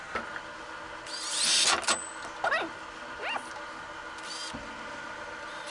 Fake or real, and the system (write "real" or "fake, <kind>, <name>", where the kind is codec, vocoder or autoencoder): real